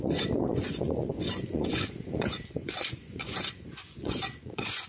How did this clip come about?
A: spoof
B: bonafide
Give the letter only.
A